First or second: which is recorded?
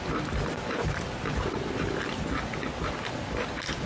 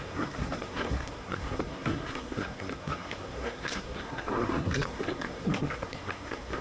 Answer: first